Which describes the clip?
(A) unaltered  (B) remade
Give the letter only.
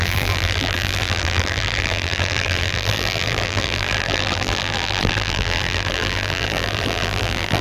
B